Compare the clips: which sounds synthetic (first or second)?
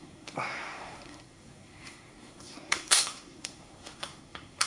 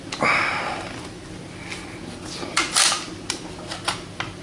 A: first